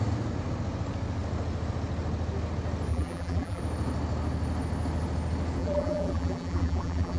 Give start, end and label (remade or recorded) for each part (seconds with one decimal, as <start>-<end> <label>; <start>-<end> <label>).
0.0-2.9 recorded; 2.9-3.6 remade; 3.6-5.6 recorded; 5.6-7.2 remade